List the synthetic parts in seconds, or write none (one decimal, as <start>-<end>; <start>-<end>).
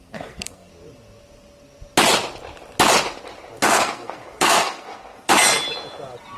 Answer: 0.0-0.7; 3.6-5.3